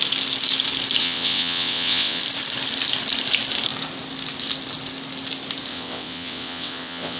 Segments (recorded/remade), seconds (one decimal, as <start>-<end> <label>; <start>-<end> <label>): 0.0-1.0 recorded; 1.0-2.2 remade; 2.2-5.7 recorded; 5.7-7.2 remade